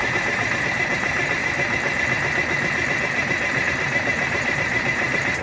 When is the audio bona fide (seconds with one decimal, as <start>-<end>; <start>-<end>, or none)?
1.4-3.7